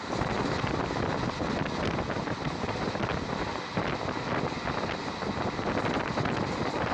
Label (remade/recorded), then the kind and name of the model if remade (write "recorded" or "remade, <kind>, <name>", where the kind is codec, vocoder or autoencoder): recorded